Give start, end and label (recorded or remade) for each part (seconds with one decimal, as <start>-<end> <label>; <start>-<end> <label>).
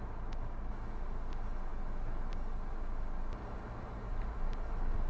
0.0-5.1 recorded